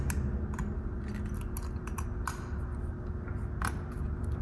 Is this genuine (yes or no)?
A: yes